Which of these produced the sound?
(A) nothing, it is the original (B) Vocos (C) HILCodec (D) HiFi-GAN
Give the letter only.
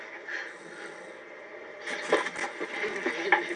A